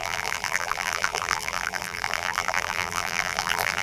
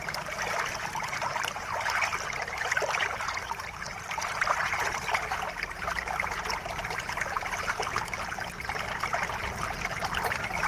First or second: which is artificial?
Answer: first